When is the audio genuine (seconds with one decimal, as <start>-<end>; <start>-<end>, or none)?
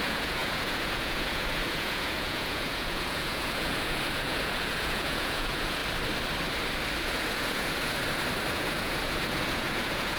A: 5.8-7.0; 8.0-8.5